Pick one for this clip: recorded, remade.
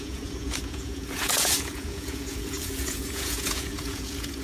remade